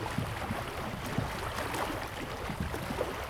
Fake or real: real